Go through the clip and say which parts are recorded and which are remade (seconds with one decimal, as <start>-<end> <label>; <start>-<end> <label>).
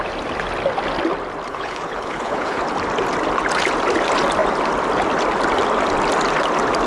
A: 0.0-1.5 recorded; 1.5-2.6 remade; 2.6-6.9 recorded